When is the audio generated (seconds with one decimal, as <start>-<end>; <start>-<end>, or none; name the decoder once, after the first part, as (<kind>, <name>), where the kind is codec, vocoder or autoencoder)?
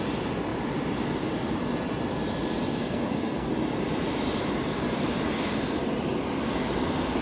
2.8-3.5 (codec, SNAC)